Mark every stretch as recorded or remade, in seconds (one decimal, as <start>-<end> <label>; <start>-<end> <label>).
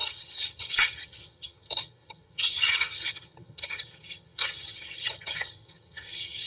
0.0-6.5 remade